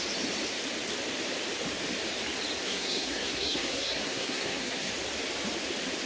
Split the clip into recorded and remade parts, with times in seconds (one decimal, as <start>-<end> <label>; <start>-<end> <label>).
0.0-2.6 recorded; 2.6-4.9 remade; 4.9-6.1 recorded